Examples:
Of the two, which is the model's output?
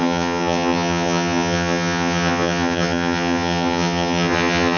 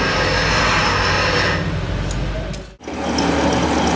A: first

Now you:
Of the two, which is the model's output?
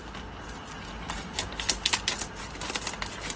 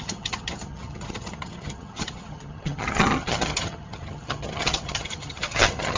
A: second